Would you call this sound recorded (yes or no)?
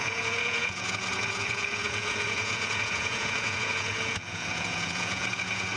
no